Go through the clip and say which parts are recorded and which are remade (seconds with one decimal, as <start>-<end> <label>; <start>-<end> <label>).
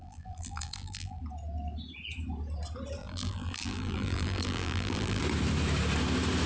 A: 0.0-1.2 remade; 1.2-3.0 recorded; 3.0-5.2 remade; 5.2-6.5 recorded